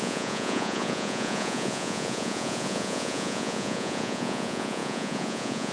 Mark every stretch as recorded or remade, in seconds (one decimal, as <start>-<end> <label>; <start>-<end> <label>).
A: 0.0-5.7 remade